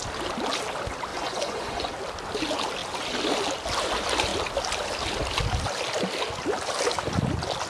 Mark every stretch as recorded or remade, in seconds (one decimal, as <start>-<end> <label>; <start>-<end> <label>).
0.0-1.1 recorded; 1.1-1.9 remade; 1.9-7.7 recorded